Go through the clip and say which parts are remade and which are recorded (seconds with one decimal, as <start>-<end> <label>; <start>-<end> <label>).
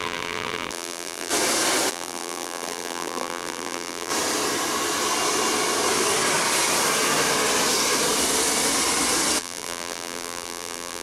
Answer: 0.0-1.3 remade; 1.3-1.9 recorded; 1.9-4.1 remade; 4.1-9.4 recorded; 9.4-11.0 remade